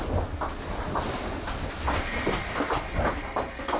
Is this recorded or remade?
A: recorded